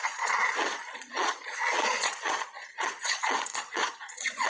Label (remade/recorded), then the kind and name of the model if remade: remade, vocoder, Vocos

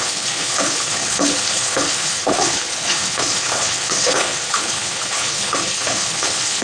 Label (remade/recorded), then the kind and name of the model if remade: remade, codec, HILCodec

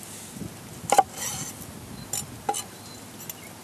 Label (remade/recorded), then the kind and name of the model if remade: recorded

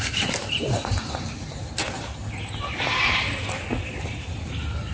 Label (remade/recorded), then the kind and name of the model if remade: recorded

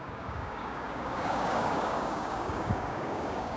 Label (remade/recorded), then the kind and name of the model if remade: remade, codec, DAC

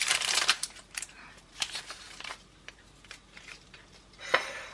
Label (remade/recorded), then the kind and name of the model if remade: remade, vocoder, BigVGAN v2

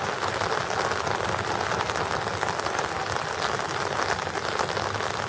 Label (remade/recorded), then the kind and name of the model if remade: recorded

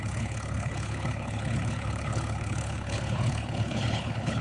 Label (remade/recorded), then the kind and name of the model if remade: remade, codec, HILCodec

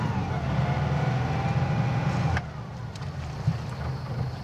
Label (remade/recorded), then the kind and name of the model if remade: recorded